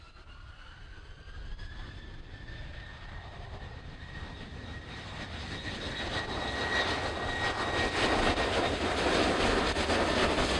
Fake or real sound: real